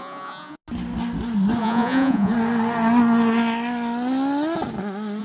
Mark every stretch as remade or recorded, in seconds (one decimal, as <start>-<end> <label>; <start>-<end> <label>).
0.0-0.6 remade; 0.6-1.6 recorded; 1.6-2.3 remade; 2.3-5.2 recorded